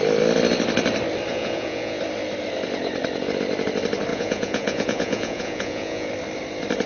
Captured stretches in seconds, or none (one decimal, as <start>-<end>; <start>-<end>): 0.0-1.3; 2.0-4.1; 6.1-6.9